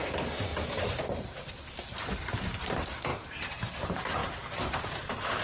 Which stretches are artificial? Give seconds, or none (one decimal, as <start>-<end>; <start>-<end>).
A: 0.0-0.5; 1.9-5.4